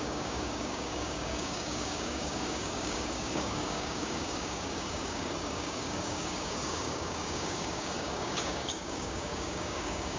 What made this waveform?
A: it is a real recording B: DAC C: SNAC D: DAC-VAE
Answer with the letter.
B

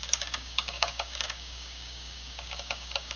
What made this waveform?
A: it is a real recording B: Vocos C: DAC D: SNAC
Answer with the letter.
C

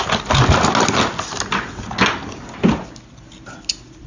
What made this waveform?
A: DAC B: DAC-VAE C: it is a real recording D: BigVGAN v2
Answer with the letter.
C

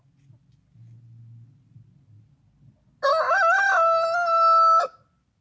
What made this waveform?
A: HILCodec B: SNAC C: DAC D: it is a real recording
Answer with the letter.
D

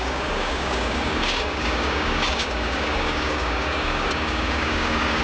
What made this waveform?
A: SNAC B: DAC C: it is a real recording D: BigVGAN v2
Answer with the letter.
B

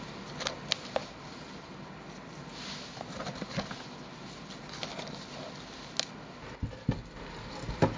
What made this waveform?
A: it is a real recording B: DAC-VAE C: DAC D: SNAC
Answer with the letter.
A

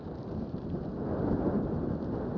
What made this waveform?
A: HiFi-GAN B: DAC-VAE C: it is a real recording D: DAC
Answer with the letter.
C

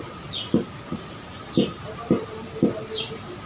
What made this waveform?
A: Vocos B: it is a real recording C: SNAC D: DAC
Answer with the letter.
B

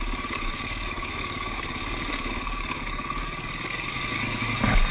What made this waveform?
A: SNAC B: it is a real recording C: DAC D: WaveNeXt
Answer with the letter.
C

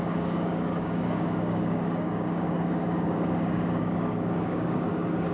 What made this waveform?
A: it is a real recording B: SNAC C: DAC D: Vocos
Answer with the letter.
C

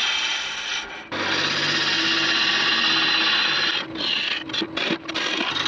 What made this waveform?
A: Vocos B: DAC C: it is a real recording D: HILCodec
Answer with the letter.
C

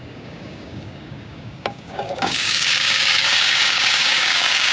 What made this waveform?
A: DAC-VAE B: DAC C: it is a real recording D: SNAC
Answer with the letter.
B